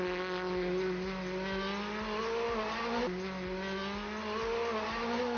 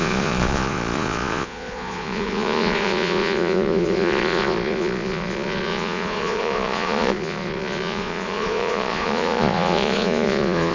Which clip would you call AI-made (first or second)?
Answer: second